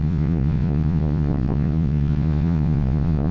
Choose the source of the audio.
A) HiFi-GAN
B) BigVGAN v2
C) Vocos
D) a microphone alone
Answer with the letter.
C